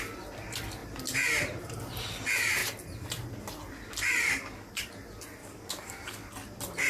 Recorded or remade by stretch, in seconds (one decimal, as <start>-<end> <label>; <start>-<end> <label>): 0.0-4.2 recorded; 4.2-4.9 remade; 4.9-5.4 recorded; 5.4-6.3 remade; 6.3-6.9 recorded